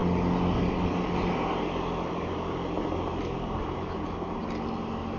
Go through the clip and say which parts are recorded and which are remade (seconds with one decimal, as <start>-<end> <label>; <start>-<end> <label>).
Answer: 0.0-5.2 recorded